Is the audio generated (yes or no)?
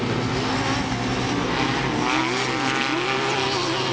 no